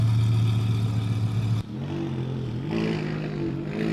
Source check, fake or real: real